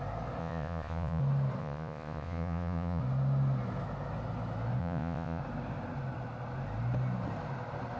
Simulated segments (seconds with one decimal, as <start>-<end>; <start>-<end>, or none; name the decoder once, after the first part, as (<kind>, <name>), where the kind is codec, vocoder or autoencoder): 0.4-1.2 (vocoder, Vocos); 1.6-3.0; 4.8-5.4